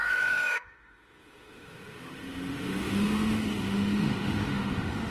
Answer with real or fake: fake